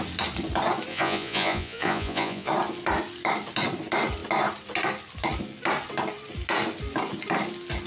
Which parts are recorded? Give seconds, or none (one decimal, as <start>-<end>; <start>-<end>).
0.0-0.9; 2.5-7.9